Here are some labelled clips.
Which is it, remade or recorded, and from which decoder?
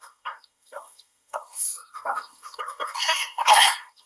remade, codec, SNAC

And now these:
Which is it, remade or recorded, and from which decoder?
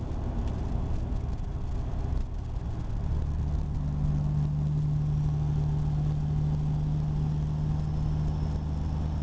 recorded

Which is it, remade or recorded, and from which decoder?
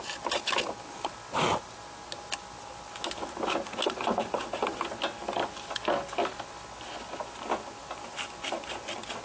recorded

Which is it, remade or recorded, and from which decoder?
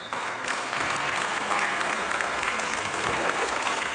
remade, codec, SNAC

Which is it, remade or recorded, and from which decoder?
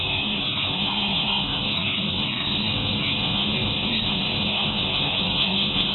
remade, codec, SNAC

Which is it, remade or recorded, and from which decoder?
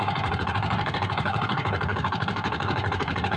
remade, codec, SNAC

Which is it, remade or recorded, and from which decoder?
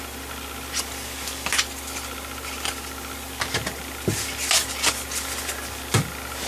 recorded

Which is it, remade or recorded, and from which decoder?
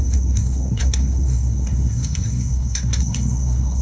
remade, codec, SNAC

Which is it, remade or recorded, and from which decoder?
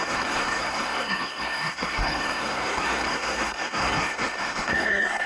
remade, codec, SNAC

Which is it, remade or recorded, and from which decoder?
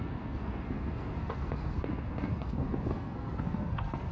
remade, codec, SNAC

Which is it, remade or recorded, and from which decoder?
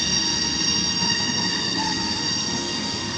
remade, codec, SNAC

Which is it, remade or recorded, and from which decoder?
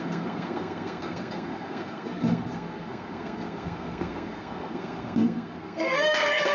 remade, codec, SNAC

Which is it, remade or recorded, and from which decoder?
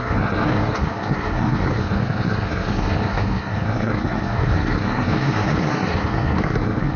remade, codec, SNAC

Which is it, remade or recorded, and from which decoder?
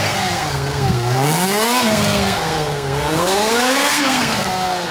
remade, codec, SNAC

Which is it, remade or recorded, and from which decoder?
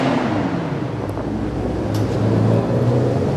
recorded